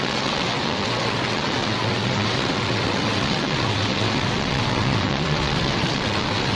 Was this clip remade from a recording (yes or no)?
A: yes